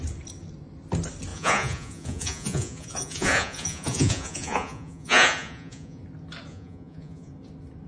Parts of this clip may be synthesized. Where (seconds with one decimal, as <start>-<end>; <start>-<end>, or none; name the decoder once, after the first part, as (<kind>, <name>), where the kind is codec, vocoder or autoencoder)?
1.3-6.0 (vocoder, Vocos); 6.5-7.3

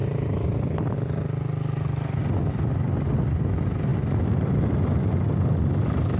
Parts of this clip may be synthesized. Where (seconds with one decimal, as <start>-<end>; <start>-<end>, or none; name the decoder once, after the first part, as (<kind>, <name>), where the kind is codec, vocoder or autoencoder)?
none

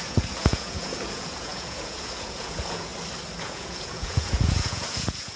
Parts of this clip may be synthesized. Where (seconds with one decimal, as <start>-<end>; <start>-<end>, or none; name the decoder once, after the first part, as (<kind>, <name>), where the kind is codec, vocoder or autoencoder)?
0.0-2.9 (vocoder, Vocos); 3.4-5.4

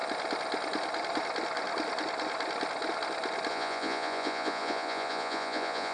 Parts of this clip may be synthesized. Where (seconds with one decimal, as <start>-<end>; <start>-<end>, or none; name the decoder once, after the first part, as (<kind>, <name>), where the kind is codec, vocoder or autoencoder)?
3.5-5.9 (vocoder, Vocos)

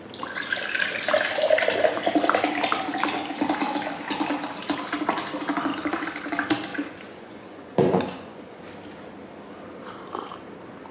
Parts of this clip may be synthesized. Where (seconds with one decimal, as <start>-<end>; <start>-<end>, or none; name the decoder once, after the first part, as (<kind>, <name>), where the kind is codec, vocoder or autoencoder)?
6.7-8.6 (vocoder, Vocos)

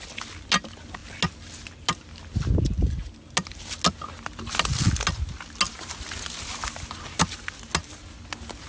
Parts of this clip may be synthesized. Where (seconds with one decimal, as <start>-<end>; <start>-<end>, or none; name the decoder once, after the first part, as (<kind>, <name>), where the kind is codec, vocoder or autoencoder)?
none